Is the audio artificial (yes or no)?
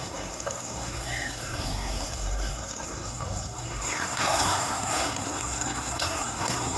yes